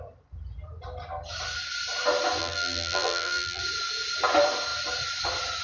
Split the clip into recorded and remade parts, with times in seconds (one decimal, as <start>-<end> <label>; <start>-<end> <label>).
0.0-2.4 recorded; 2.4-3.6 remade; 3.6-5.6 recorded